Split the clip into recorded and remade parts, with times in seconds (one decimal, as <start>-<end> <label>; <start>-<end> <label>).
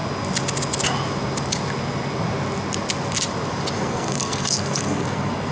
0.0-3.8 recorded; 3.8-5.5 remade